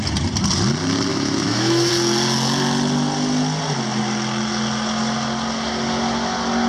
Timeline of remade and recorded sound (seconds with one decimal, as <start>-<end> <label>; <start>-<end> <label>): 0.0-1.1 recorded; 1.1-1.9 remade; 1.9-6.7 recorded